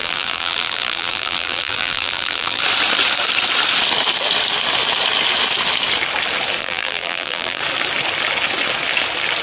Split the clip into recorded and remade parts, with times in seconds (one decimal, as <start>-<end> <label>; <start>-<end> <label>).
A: 0.0-2.6 remade; 2.6-6.6 recorded; 6.6-7.6 remade; 7.6-9.4 recorded